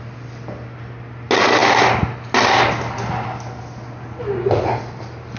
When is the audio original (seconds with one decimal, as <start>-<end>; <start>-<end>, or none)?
0.0-5.4